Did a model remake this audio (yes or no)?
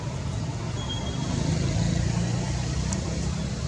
no